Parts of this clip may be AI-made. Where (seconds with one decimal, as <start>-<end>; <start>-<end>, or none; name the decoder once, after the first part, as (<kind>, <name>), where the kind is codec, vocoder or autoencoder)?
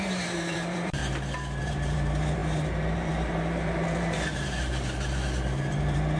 0.0-1.0 (vocoder, BigVGAN v2); 1.6-6.2